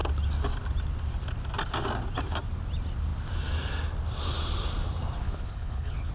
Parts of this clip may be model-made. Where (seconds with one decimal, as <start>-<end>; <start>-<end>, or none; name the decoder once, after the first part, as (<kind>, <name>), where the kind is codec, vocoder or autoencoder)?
5.2-6.1 (codec, HILCodec)